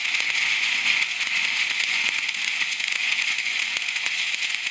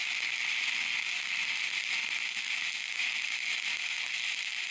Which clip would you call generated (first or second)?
first